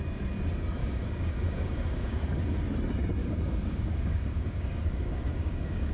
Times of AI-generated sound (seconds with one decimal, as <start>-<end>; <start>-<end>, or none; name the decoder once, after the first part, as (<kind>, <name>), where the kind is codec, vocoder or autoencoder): 0.8-2.4 (codec, DAC); 3.2-5.9